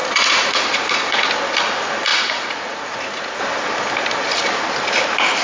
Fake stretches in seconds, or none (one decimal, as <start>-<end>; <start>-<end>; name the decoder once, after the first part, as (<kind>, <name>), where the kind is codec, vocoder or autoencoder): 0.0-1.3 (vocoder, Vocos); 2.1-3.4